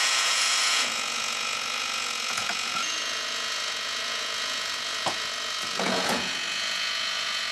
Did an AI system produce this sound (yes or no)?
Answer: yes